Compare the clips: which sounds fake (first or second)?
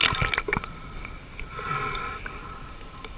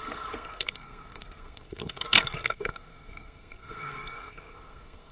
second